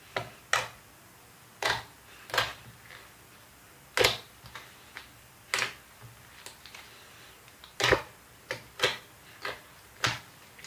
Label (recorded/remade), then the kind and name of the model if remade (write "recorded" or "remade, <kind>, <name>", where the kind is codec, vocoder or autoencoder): recorded